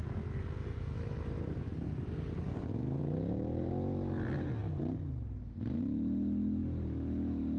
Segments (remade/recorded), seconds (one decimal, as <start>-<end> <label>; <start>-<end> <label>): 0.0-3.0 recorded; 3.0-3.7 remade; 3.7-7.6 recorded